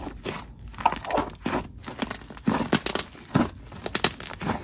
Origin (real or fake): real